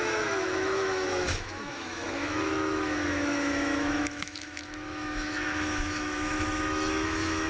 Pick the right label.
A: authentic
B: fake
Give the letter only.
B